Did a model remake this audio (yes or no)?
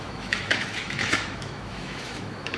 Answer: yes